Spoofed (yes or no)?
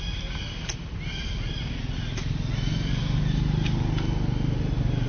no